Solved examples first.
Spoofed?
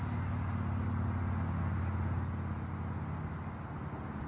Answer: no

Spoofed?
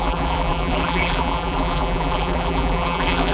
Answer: yes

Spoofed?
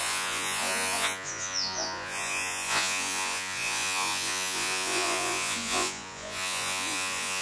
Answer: yes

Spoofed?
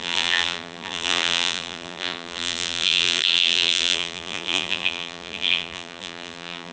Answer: yes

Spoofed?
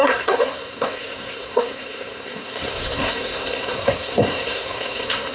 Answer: yes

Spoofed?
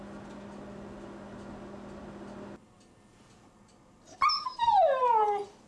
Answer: no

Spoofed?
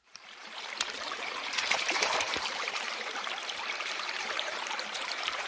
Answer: yes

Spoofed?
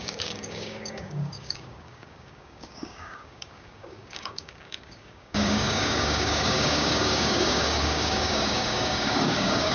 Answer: yes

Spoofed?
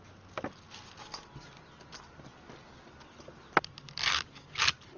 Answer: no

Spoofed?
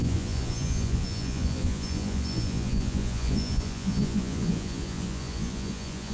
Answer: yes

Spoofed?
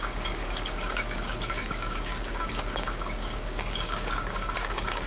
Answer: yes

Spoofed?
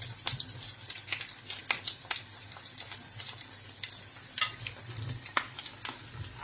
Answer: no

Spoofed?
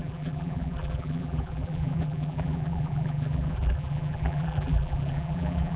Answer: yes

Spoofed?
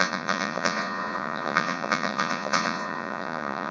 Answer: yes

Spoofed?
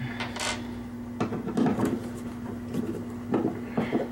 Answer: no